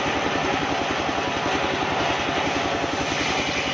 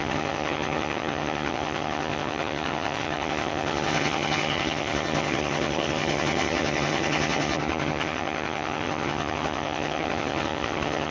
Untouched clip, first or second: first